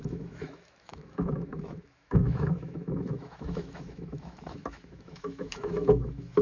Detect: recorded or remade remade